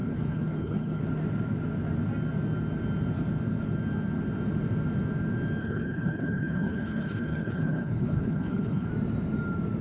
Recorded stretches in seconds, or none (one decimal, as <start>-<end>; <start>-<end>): 1.0-5.6; 8.9-9.8